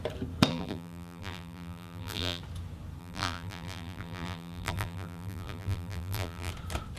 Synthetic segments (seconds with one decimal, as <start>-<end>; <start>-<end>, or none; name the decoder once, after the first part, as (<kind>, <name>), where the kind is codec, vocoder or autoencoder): 0.5-2.4 (vocoder, BigVGAN v2); 3.0-6.5

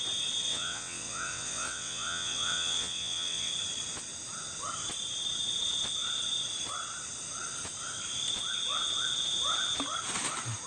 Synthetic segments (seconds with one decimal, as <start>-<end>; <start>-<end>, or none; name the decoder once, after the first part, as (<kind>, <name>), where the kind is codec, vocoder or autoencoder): 0.5-3.5 (vocoder, WaveNeXt)

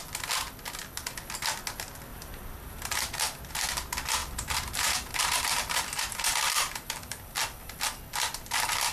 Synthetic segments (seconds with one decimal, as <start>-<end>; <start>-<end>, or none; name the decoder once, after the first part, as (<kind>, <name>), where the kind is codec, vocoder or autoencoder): 2.1-3.5 (vocoder, BigVGAN v2); 4.2-7.2